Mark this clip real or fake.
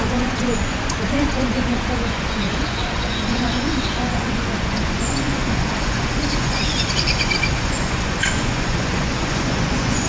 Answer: fake